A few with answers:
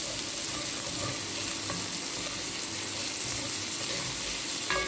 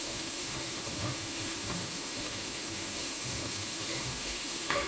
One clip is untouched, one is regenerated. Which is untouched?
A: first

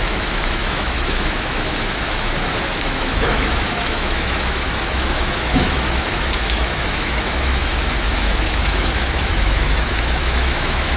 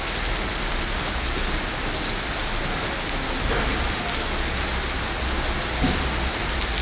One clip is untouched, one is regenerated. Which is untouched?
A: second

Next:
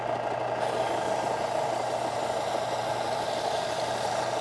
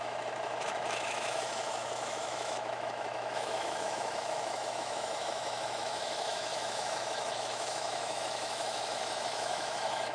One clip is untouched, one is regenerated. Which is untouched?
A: first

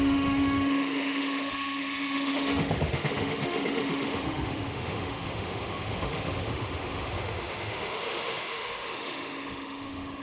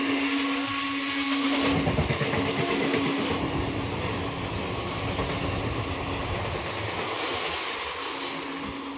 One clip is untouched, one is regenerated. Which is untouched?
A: second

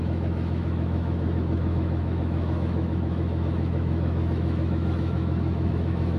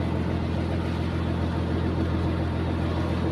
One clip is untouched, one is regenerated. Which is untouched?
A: second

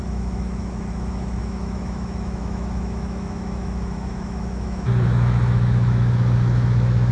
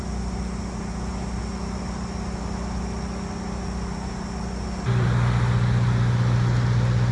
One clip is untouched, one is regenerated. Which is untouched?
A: second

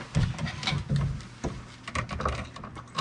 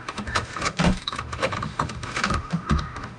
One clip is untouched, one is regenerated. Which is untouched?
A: first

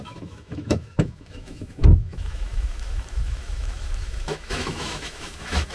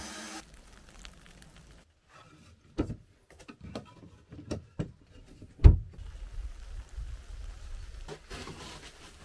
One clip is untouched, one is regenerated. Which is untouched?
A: second